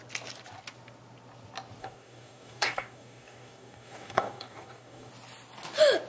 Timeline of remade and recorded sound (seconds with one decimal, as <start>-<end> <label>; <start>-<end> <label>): 0.0-1.8 recorded; 1.8-5.1 remade; 5.1-6.1 recorded